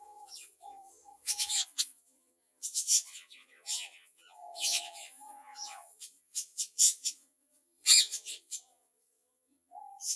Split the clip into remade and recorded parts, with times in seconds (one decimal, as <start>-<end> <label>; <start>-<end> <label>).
0.0-10.2 remade